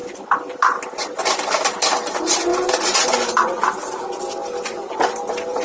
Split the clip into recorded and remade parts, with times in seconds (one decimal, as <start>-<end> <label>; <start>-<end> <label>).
0.0-5.6 recorded